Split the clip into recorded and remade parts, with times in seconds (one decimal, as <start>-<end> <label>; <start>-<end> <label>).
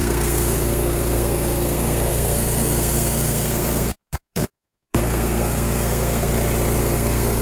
0.0-6.3 remade; 6.3-6.8 recorded; 6.8-7.4 remade